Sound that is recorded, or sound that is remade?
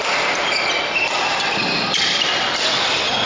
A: recorded